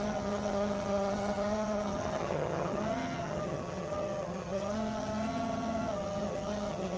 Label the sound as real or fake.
fake